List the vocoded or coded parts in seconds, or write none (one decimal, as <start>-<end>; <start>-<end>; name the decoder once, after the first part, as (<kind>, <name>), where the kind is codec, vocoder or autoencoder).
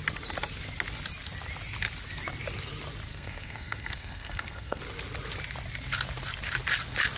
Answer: 3.1-4.8 (codec, SNAC)